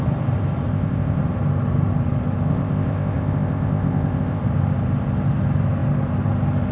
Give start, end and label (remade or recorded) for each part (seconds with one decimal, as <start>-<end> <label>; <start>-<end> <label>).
0.0-0.7 recorded; 0.7-1.2 remade; 1.2-2.5 recorded; 2.5-4.4 remade; 4.4-6.7 recorded